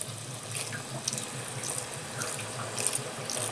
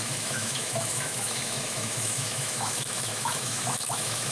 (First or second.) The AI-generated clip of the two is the second